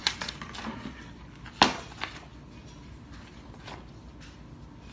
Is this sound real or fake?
real